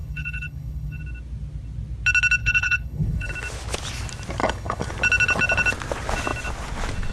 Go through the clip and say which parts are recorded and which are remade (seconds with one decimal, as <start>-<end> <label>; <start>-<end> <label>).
0.0-1.0 remade; 1.0-2.4 recorded; 2.4-3.3 remade; 3.3-4.4 recorded; 4.4-4.9 remade; 4.9-7.1 recorded